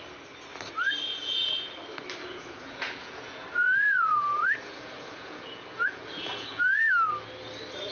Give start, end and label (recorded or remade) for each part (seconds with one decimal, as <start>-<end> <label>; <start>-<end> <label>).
0.0-1.1 recorded; 1.1-1.7 remade; 1.7-2.2 recorded; 2.2-6.9 remade; 6.9-7.9 recorded